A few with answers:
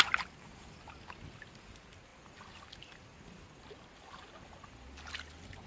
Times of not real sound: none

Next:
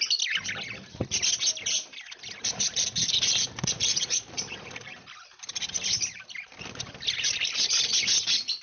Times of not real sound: 3.9-4.4 (vocoder, Vocos)

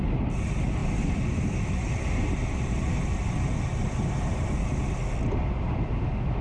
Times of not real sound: none